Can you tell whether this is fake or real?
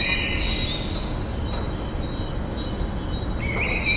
real